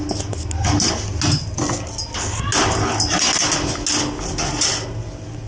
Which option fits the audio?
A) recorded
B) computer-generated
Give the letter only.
A